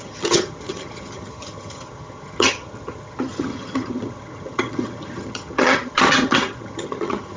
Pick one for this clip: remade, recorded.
remade